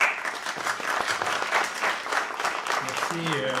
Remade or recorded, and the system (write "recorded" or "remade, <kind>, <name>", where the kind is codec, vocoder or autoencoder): recorded